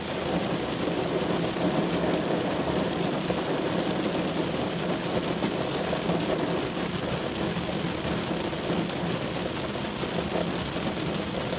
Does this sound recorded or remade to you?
recorded